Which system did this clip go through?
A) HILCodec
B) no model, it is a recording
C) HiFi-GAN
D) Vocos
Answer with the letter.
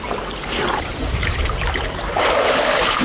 B